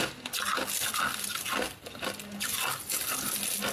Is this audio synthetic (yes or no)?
no